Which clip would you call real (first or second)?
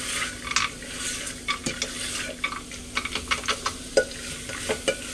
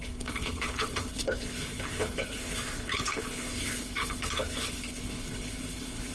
first